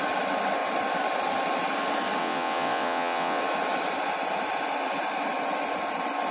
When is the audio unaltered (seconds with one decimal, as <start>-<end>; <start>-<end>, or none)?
0.0-2.2; 3.4-6.3